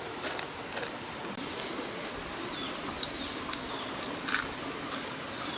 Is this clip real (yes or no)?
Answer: yes